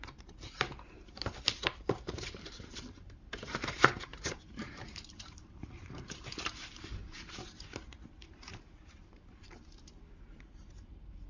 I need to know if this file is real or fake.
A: fake